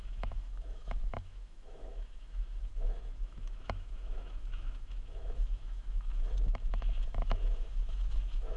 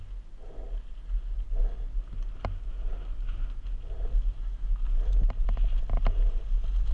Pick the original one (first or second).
second